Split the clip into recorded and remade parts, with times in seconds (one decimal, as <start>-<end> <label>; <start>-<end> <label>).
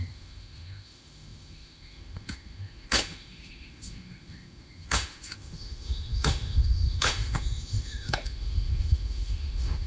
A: 0.0-9.9 remade